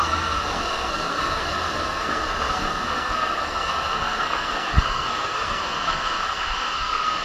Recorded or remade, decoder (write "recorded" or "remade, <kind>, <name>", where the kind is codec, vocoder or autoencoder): remade, codec, SNAC